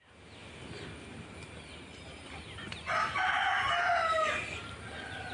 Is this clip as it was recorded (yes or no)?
yes